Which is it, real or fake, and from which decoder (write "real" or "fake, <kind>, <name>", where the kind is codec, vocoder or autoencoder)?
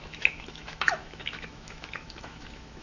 fake, autoencoder, DAC-VAE